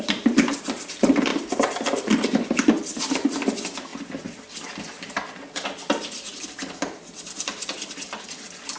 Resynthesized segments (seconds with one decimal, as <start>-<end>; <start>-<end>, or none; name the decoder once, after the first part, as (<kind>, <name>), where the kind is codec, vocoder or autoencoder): none